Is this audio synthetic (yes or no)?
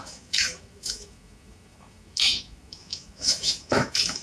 yes